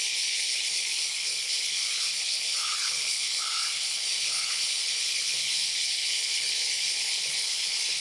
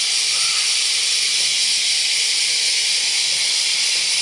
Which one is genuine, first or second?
second